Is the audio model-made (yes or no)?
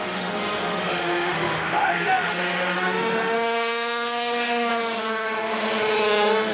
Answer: yes